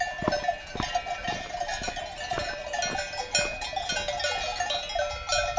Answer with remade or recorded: recorded